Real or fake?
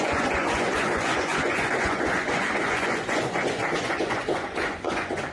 fake